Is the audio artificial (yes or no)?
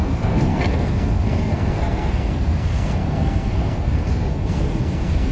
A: yes